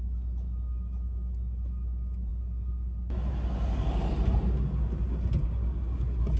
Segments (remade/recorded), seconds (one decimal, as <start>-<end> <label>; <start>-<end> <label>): 0.0-6.4 recorded